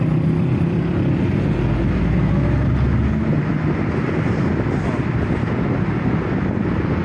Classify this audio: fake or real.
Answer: real